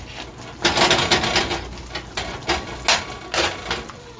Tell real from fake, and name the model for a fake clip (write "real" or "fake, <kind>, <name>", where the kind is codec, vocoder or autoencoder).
real